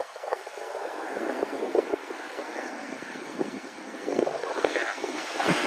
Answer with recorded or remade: remade